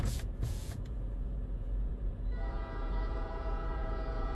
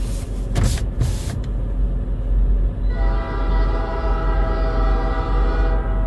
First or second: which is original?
second